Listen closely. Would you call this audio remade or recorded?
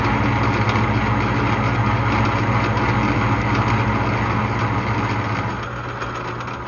recorded